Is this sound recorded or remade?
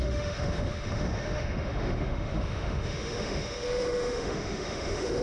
remade